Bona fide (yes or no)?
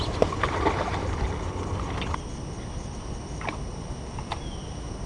yes